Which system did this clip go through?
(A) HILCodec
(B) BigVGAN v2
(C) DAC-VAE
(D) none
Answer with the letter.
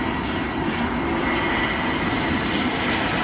D